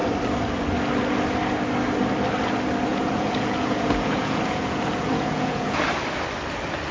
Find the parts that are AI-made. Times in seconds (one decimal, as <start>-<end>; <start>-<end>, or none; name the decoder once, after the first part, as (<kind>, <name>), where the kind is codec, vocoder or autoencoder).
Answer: 2.9-5.8 (vocoder, Vocos)